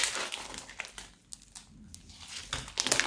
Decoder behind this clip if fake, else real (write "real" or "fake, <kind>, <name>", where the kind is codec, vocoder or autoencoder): real